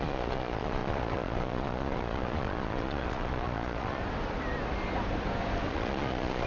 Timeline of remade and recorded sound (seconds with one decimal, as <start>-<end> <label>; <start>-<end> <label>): 0.0-4.0 remade; 4.0-5.7 recorded; 5.7-6.5 remade